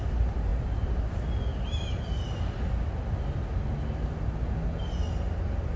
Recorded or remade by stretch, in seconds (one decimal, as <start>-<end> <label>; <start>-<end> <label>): 0.0-5.8 recorded